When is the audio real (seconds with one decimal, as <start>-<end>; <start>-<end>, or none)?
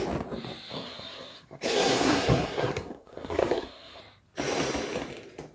0.0-0.7; 4.0-5.5